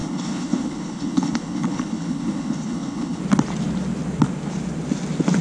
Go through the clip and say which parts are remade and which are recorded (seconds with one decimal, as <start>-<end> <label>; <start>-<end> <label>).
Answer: 0.0-3.2 remade; 3.2-5.4 recorded